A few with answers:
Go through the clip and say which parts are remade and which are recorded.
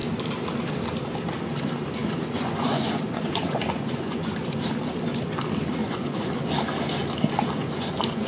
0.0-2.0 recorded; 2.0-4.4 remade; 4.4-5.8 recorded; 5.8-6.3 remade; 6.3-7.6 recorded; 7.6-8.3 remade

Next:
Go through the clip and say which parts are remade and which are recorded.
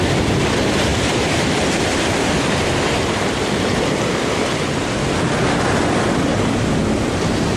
0.0-7.6 recorded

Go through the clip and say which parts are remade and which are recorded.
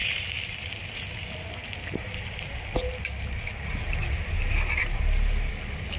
0.0-1.5 remade; 1.5-4.8 recorded; 4.8-5.5 remade; 5.5-6.0 recorded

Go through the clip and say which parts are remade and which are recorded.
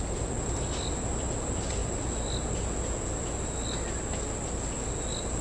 0.0-5.4 recorded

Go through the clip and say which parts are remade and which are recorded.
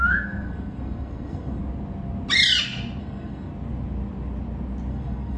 0.0-1.6 remade; 1.6-3.0 recorded; 3.0-3.5 remade; 3.5-4.9 recorded; 4.9-5.4 remade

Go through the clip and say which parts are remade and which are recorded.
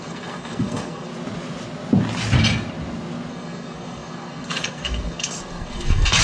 0.0-1.1 remade; 1.1-3.3 recorded; 3.3-6.2 remade